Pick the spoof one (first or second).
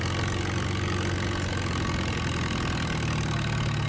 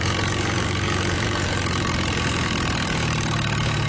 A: second